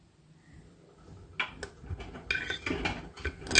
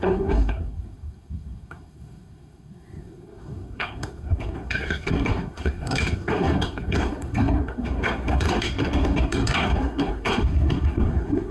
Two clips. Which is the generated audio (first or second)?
second